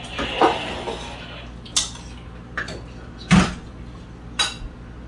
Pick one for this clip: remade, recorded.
recorded